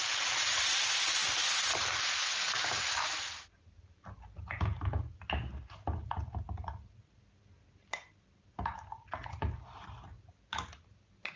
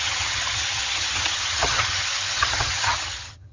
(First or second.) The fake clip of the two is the second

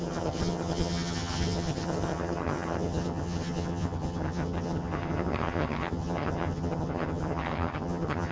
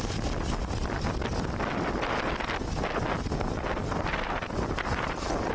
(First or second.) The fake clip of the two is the first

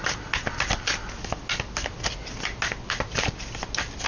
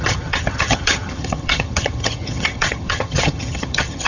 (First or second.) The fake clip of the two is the second